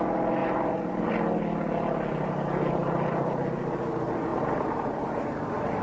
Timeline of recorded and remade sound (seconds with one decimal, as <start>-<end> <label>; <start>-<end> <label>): 0.0-0.4 recorded; 0.4-1.1 remade; 1.1-4.3 recorded; 4.3-5.8 remade